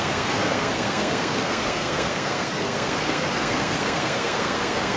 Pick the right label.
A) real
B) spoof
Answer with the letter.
B